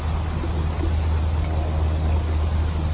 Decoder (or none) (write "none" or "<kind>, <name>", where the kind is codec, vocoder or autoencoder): none